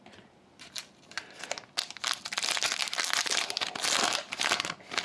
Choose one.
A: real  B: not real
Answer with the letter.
A